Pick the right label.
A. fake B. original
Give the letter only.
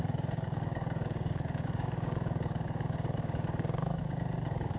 A